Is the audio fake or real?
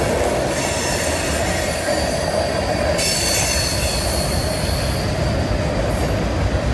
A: real